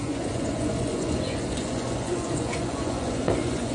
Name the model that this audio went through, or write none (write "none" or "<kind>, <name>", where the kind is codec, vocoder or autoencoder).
vocoder, Vocos